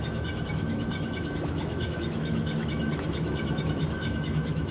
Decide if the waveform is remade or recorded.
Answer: remade